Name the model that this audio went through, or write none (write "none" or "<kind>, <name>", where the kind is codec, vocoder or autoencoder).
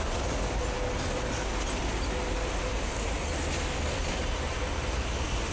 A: none